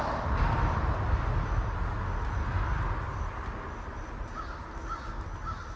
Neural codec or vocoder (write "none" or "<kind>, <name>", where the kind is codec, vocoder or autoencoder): none